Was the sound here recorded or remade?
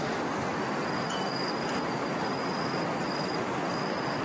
recorded